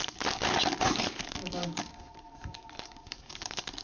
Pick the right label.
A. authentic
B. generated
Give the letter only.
B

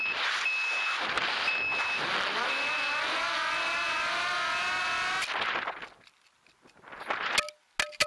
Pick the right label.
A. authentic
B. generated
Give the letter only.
A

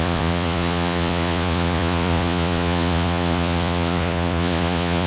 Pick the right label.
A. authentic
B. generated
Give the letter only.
B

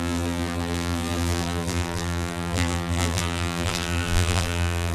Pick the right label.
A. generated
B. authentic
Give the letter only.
A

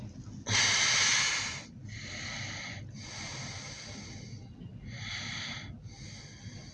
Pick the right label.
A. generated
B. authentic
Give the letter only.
B